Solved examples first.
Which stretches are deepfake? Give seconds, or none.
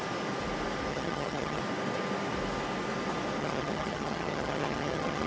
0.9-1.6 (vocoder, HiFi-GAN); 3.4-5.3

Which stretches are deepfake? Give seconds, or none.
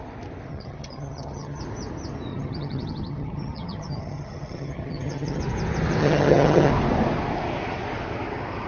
0.5-1.6 (vocoder, HiFi-GAN); 2.3-5.4; 6.0-6.7